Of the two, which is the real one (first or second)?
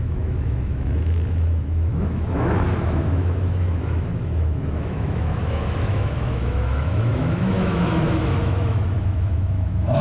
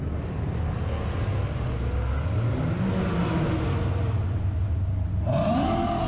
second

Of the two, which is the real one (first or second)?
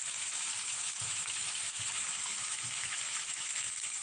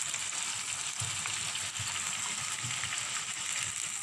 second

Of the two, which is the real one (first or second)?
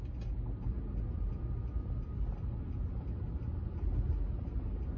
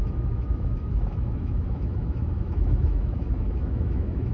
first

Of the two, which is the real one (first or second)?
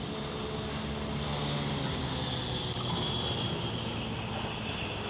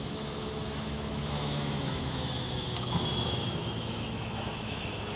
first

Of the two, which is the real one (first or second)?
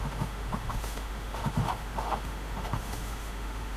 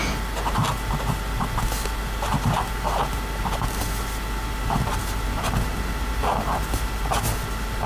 second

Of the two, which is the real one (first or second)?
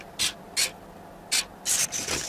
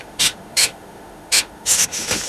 first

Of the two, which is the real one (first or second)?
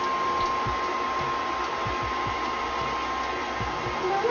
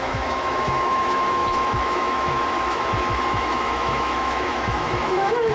first